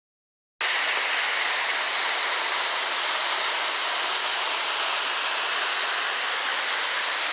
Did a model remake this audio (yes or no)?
no